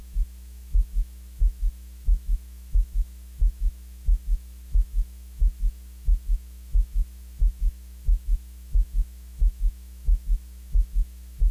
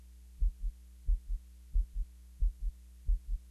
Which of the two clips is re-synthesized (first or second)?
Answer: first